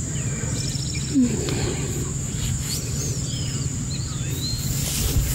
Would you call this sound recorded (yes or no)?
yes